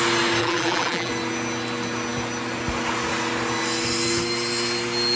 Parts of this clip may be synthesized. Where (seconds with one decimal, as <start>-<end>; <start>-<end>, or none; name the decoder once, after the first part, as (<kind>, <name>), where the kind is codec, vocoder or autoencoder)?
0.4-1.1 (vocoder, BigVGAN v2)